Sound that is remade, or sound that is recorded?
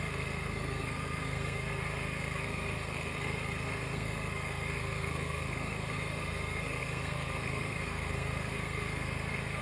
remade